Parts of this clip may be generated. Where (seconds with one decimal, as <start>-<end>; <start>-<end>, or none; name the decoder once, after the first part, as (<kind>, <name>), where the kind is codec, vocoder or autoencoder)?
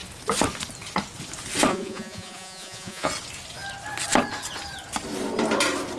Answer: 1.7-3.1 (vocoder, Vocos)